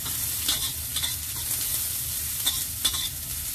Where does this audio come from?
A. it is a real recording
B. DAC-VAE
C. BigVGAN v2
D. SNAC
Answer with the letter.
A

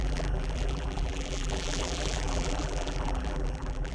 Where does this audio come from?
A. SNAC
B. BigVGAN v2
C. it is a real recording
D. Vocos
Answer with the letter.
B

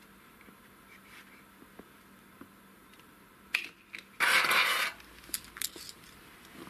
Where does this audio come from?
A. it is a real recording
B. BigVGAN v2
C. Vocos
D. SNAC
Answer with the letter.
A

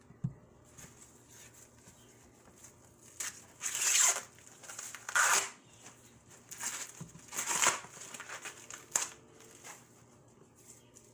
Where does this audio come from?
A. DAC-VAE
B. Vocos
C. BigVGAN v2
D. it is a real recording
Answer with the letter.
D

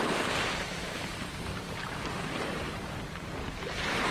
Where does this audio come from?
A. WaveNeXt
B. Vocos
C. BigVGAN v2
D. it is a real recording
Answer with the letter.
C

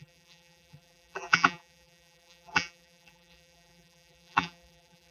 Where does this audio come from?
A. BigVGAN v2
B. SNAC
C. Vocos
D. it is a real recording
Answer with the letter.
A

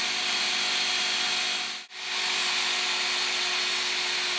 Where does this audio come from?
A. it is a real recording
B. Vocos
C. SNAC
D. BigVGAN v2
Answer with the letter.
A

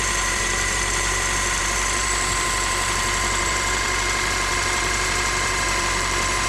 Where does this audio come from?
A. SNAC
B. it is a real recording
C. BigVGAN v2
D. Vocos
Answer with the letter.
C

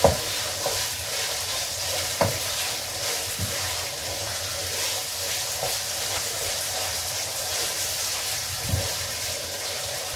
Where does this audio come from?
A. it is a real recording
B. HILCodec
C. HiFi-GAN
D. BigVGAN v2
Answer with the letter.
D